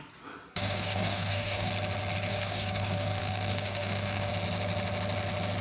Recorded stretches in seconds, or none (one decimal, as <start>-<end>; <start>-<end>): 0.0-0.5; 1.7-2.3; 4.3-5.6